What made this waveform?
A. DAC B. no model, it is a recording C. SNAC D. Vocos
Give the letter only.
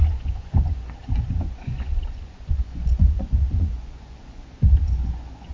D